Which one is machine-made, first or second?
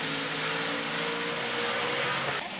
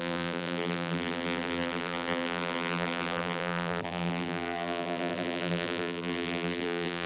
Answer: second